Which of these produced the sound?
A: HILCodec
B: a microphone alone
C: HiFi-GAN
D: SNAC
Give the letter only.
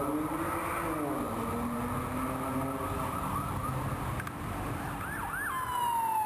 B